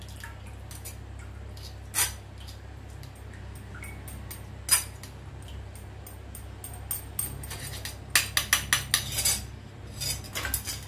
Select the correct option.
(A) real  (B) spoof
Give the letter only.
A